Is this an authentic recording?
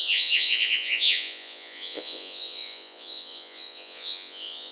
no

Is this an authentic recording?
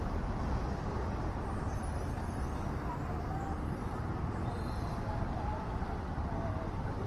yes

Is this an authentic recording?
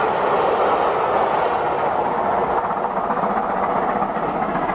yes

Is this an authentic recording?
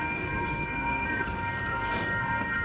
no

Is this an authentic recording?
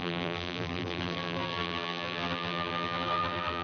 no